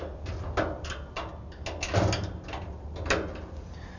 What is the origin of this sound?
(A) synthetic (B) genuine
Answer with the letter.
B